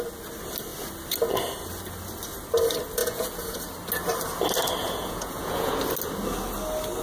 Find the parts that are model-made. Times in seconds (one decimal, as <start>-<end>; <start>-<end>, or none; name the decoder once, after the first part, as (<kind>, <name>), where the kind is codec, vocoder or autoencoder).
3.0-3.6 (vocoder, Vocos); 4.8-5.8